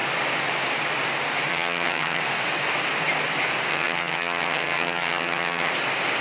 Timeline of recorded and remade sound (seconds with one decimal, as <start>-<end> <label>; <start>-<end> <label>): 0.0-1.5 recorded; 1.5-2.2 remade; 2.2-3.7 recorded; 3.7-5.7 remade; 5.7-6.2 recorded